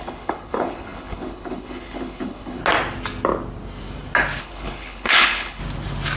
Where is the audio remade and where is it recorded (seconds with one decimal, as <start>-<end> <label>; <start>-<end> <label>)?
0.0-2.6 remade; 2.6-4.4 recorded; 4.4-5.6 remade; 5.6-6.2 recorded